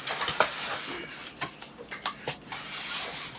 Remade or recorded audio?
recorded